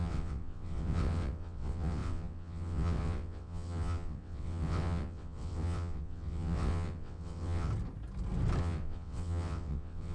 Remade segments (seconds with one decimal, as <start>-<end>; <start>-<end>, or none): 0.0-7.7; 8.6-10.1